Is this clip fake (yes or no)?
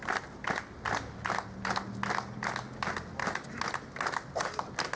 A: no